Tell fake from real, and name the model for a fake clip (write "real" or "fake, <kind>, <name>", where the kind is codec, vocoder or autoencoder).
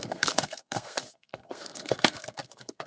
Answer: fake, codec, SNAC